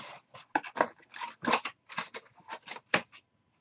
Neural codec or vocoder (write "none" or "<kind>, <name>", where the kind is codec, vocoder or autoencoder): none